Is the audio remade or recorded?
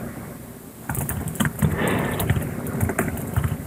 recorded